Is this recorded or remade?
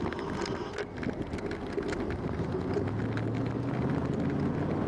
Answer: recorded